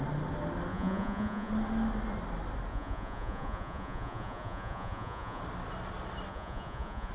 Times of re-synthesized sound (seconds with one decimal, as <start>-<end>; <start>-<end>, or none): 0.7-1.5; 2.7-5.4; 6.3-7.1